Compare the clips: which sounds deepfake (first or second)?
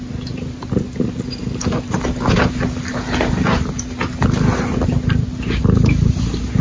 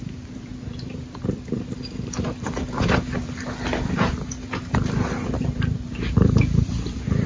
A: second